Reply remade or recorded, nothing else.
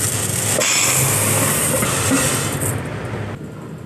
recorded